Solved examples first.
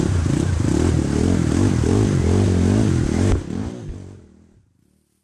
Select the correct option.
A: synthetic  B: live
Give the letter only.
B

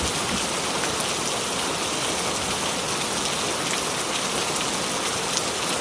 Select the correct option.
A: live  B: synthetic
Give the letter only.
A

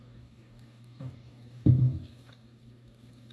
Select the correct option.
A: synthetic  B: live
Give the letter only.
A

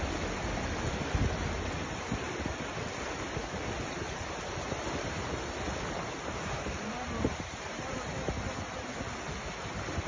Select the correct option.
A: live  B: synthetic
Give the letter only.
A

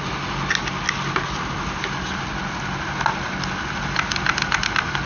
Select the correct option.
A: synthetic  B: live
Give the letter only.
B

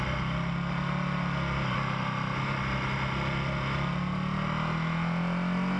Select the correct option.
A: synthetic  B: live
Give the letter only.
B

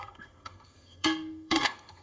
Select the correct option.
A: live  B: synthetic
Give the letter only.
B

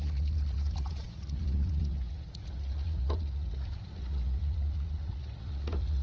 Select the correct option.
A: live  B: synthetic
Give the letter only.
B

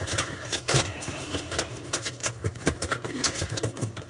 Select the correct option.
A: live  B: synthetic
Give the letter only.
B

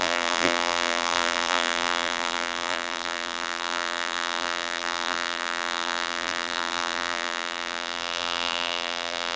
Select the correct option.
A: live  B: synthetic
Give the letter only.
B